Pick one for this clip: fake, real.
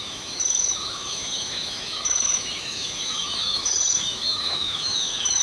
fake